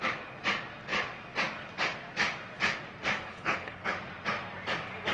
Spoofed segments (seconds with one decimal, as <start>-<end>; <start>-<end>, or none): 3.3-3.9